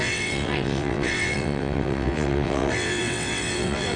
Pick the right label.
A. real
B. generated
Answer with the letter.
B